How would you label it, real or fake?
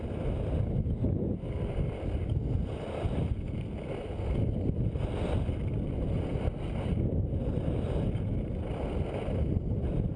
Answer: real